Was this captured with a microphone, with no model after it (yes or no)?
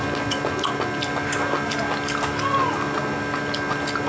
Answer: yes